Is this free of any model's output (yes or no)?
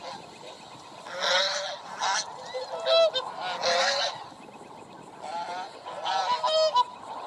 yes